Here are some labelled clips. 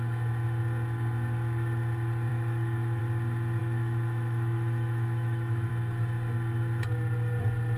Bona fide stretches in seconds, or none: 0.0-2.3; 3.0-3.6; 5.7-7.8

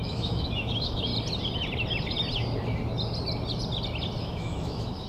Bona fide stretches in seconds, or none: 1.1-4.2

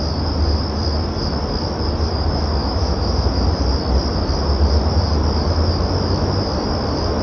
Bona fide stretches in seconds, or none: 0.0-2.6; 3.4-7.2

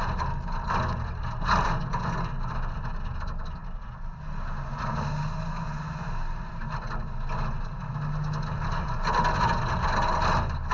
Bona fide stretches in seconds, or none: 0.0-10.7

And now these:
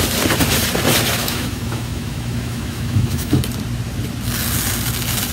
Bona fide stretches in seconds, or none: 0.0-1.2; 3.4-5.3

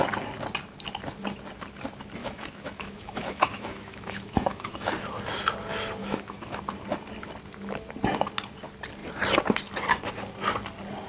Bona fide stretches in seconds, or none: 0.0-2.2; 4.9-6.0; 6.6-11.1

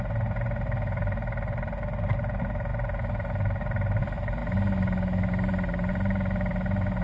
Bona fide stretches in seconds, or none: 0.0-7.0

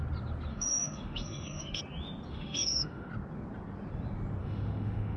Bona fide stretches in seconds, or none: 0.0-0.5; 1.8-2.3; 3.1-4.4